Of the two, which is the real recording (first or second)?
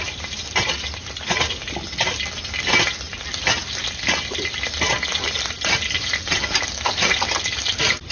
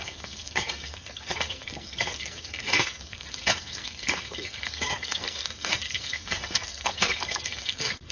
first